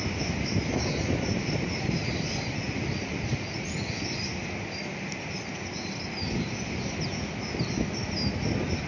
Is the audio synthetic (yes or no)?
no